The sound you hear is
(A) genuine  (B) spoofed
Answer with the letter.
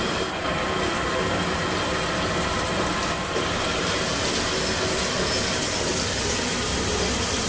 A